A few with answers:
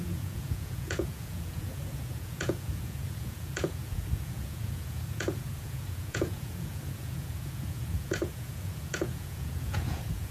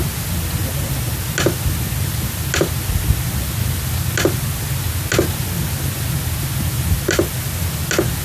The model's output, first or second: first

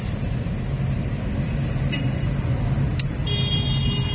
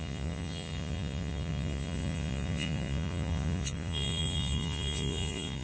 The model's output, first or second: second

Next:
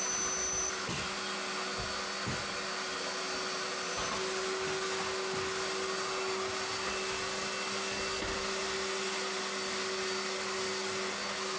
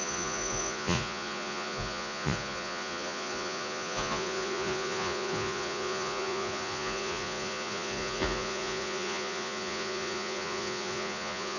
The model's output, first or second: second